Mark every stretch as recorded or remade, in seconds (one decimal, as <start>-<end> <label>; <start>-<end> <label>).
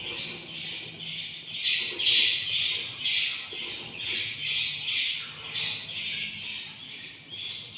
0.0-7.8 recorded